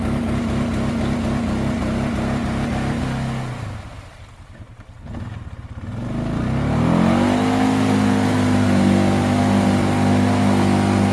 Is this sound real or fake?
real